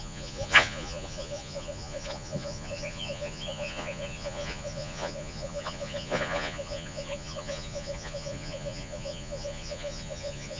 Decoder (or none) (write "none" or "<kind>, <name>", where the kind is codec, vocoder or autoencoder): vocoder, Vocos